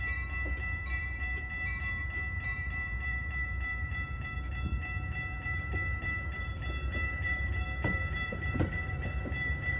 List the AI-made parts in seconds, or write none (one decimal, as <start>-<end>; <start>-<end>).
0.0-9.8